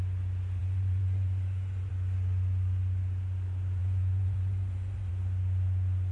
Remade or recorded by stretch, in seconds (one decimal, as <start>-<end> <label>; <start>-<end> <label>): 0.0-0.6 recorded; 0.6-1.9 remade; 1.9-3.8 recorded; 3.8-5.1 remade; 5.1-6.1 recorded